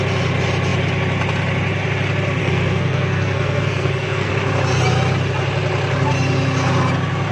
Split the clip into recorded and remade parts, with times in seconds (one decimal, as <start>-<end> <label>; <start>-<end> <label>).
0.0-2.4 recorded; 2.4-4.3 remade; 4.3-7.3 recorded